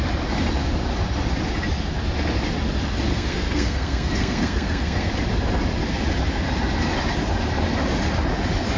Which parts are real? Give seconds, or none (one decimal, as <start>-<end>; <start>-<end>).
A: 0.0-3.1; 5.1-8.8